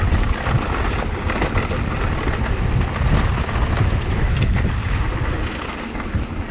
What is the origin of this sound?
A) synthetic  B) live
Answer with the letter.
B